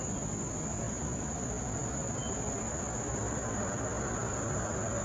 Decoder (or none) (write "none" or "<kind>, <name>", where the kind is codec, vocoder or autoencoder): none